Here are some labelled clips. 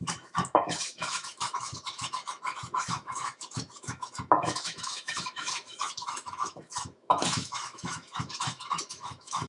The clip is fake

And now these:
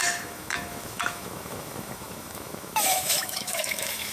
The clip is fake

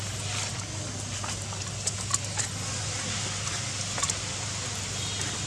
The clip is real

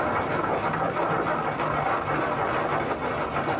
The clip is real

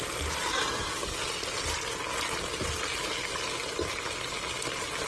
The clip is real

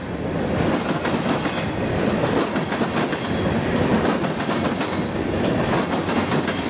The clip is real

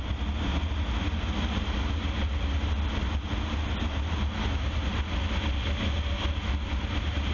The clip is real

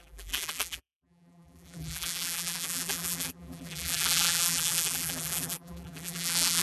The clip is fake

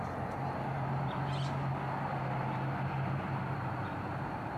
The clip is real